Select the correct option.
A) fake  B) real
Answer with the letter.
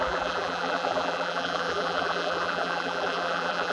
A